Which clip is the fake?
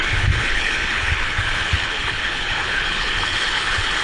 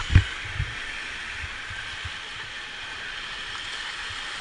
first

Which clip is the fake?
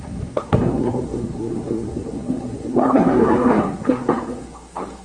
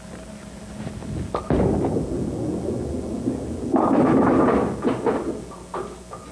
first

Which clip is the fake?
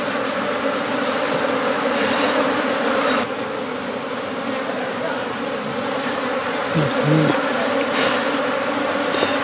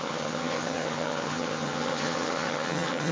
second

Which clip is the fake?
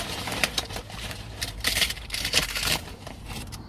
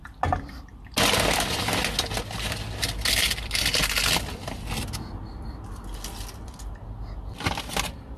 first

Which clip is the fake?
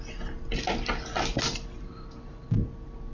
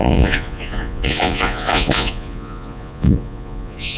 second